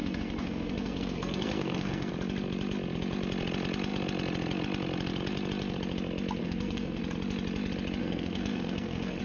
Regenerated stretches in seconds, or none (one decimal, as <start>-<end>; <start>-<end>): 0.0-2.1; 6.4-7.0; 8.0-9.2